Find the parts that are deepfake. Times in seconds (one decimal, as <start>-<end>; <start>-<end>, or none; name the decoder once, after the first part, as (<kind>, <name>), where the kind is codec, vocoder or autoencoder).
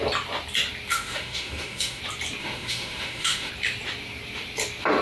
0.9-2.0 (autoencoder, DAC-VAE); 2.4-3.5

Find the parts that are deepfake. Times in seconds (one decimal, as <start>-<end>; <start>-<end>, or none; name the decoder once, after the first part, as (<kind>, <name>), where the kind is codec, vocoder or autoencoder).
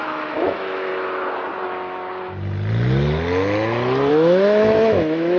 0.0-0.9 (autoencoder, DAC-VAE); 4.1-5.4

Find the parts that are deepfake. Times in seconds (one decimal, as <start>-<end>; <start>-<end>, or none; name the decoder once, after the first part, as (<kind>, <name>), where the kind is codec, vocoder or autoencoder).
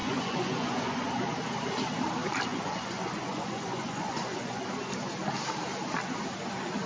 0.0-1.1 (vocoder, Vocos); 2.5-4.6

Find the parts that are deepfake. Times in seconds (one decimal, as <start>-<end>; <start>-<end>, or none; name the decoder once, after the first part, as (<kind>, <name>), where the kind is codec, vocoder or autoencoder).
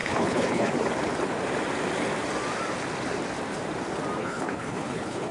0.0-0.7 (codec, HILCodec); 4.2-5.3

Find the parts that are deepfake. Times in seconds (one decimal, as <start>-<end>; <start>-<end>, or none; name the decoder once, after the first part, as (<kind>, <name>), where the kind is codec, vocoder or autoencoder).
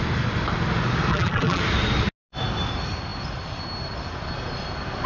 1.1-1.6 (vocoder, BigVGAN v2)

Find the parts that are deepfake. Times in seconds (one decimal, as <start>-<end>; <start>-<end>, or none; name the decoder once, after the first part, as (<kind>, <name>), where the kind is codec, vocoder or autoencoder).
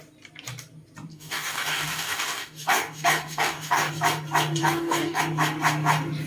1.1-3.9 (codec, DAC); 4.6-5.2